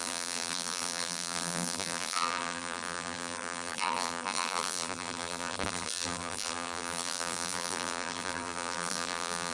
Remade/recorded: remade